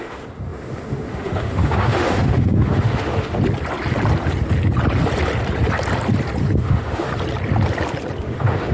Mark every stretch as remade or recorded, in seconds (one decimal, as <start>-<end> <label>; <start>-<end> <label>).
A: 0.0-3.4 remade; 3.4-6.6 recorded; 6.6-7.1 remade; 7.1-8.2 recorded; 8.2-8.7 remade

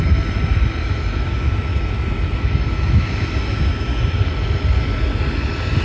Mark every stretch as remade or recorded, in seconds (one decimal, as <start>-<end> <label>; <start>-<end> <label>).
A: 0.0-0.8 recorded; 0.8-4.3 remade; 4.3-5.8 recorded

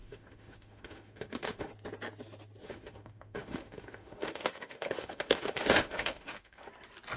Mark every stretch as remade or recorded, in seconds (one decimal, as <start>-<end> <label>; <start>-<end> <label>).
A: 0.0-1.7 remade; 1.7-2.6 recorded; 2.6-6.7 remade; 6.7-7.2 recorded

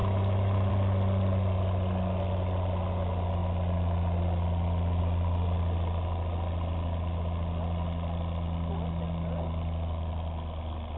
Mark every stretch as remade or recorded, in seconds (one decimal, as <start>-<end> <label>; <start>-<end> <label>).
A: 0.0-0.7 remade; 0.7-11.0 recorded

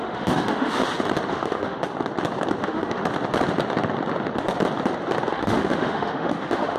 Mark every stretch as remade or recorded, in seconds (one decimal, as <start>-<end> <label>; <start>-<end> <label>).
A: 0.0-0.8 remade; 0.8-1.3 recorded; 1.3-1.8 remade; 1.8-2.6 recorded; 2.6-3.0 remade; 3.0-5.3 recorded; 5.3-6.8 remade

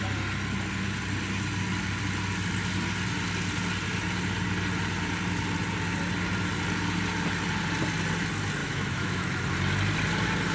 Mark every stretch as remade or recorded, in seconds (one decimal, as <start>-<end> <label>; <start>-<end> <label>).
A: 0.0-8.6 recorded; 8.6-9.4 remade; 9.4-10.5 recorded

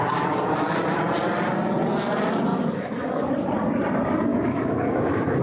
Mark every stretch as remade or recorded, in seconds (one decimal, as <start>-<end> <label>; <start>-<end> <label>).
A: 0.0-2.5 recorded; 2.5-3.3 remade; 3.3-4.3 recorded; 4.3-5.4 remade